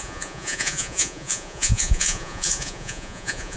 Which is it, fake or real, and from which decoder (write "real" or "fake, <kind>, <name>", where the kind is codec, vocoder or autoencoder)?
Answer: fake, vocoder, Vocos